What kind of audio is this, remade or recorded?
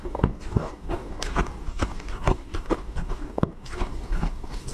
remade